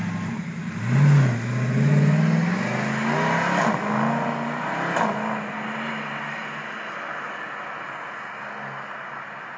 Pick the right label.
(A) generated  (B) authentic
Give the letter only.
B